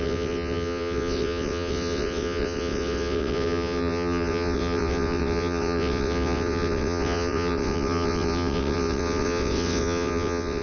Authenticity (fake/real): fake